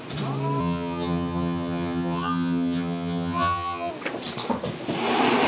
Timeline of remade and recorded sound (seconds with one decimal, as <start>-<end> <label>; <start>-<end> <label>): 0.0-0.6 recorded; 0.6-3.9 remade; 3.9-5.5 recorded